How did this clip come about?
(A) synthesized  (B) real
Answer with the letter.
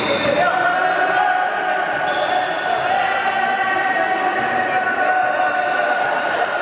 B